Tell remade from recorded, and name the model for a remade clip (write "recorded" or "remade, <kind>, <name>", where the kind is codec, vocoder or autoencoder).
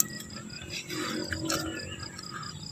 recorded